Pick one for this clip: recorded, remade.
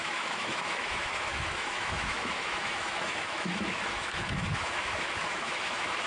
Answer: remade